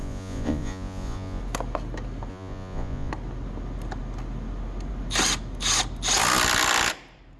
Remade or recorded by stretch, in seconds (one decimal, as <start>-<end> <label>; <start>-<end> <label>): 0.0-1.4 remade; 1.4-2.3 recorded; 2.3-3.1 remade; 3.1-7.4 recorded